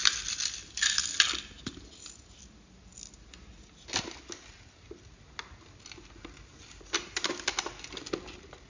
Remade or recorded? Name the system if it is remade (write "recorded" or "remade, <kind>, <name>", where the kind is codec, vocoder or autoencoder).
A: recorded